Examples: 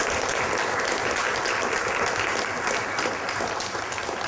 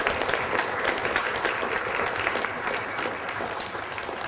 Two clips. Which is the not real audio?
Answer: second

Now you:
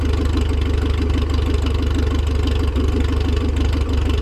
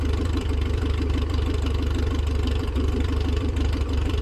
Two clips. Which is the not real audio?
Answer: second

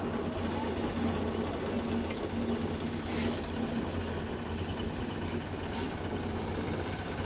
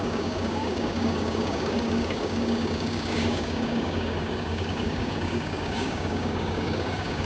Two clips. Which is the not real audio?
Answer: second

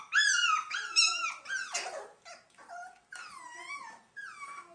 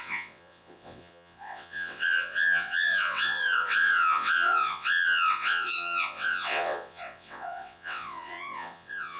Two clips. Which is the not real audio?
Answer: second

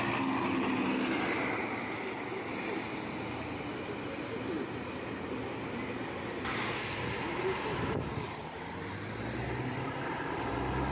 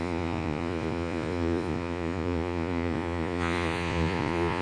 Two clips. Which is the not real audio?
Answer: second